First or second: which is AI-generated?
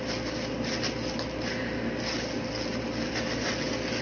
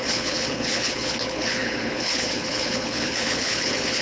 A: second